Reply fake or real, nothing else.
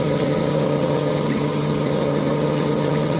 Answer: fake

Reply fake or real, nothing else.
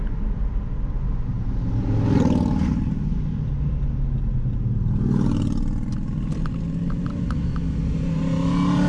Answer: real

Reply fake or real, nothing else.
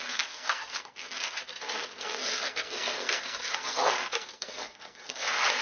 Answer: fake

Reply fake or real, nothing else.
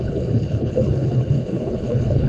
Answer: fake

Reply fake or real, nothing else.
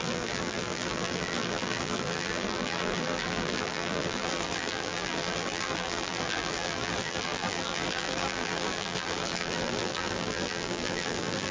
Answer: fake